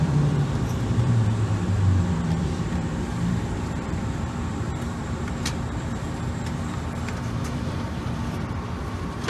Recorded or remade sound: remade